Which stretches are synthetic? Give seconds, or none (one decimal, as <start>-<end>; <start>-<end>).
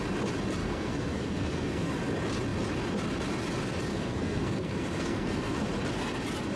0.6-1.9; 3.9-5.7